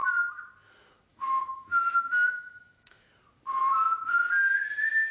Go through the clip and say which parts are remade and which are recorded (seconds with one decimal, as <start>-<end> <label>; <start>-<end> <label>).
0.0-1.1 recorded; 1.1-3.1 remade; 3.1-5.1 recorded